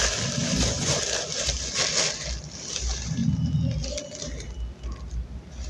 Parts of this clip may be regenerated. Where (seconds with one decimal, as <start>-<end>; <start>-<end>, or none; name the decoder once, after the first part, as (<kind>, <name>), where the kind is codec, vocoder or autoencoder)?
0.4-1.0 (vocoder, Vocos)